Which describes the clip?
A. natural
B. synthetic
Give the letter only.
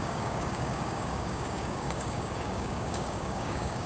B